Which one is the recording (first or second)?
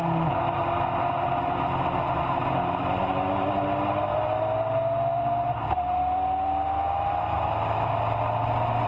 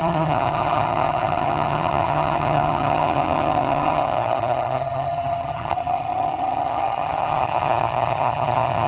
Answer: first